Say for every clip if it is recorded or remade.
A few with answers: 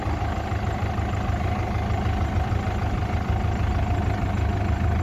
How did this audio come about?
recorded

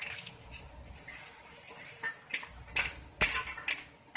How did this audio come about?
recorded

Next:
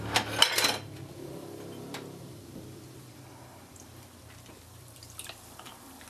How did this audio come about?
remade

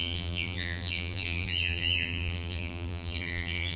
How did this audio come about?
remade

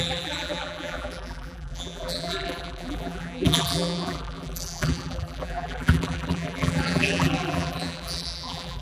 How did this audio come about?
remade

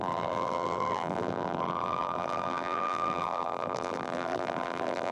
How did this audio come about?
remade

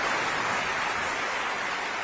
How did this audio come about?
recorded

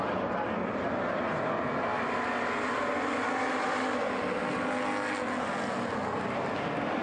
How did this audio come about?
recorded